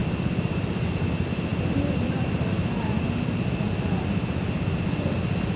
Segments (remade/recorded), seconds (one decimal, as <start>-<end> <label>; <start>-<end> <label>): 0.0-5.6 recorded

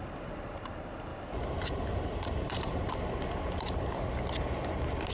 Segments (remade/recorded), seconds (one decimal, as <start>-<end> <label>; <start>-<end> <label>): 0.0-1.1 recorded; 1.1-2.9 remade; 2.9-5.1 recorded

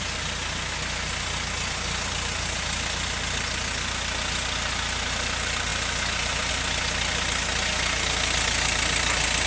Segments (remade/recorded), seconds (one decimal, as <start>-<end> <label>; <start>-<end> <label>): 0.0-9.5 recorded